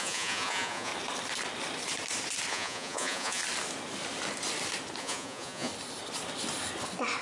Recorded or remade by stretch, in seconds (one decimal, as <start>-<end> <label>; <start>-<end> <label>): 0.0-0.9 remade; 0.9-2.5 recorded; 2.5-3.4 remade; 3.4-5.0 recorded; 5.0-5.7 remade; 5.7-7.2 recorded